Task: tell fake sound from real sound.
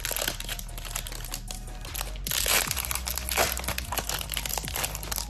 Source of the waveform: real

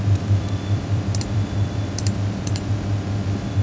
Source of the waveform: fake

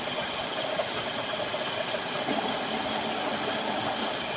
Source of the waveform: real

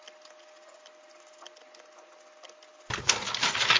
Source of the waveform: real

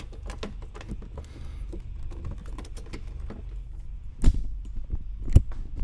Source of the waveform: real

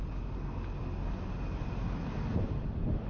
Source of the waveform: real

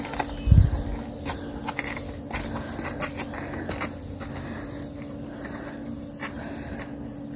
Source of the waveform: real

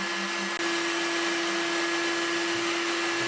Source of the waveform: real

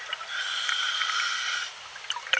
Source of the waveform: real